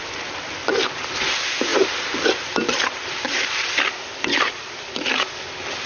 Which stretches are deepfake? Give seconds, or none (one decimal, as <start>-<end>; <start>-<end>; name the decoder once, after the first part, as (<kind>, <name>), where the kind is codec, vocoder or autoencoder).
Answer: none

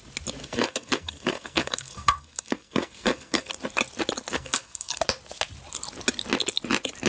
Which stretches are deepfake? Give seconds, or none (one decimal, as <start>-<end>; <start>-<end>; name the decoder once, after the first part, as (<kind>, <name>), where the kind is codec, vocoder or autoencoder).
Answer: 0.4-3.5 (codec, SNAC); 4.3-5.0

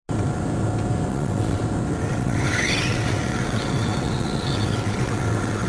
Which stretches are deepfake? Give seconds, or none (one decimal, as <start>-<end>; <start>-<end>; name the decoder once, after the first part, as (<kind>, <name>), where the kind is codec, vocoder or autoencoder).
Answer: 1.1-1.6 (vocoder, WaveNeXt); 2.1-5.7